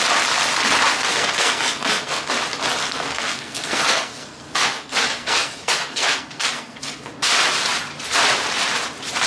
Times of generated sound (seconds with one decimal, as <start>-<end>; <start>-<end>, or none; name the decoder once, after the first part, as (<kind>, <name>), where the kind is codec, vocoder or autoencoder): 0.9-2.3 (codec, SNAC); 2.8-7.1